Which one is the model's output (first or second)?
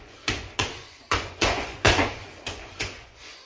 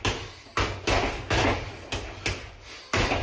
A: first